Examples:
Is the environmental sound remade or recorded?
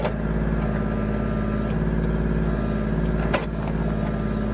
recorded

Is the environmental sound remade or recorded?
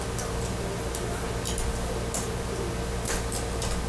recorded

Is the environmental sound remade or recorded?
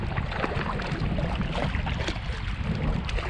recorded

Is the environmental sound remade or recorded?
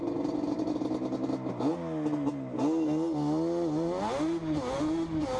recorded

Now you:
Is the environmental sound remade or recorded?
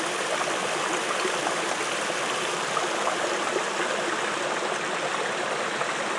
recorded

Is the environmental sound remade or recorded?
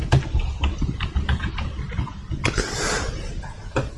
recorded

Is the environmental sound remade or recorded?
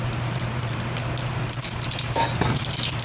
remade